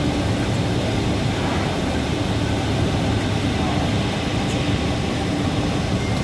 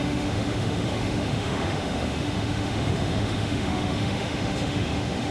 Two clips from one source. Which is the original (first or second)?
first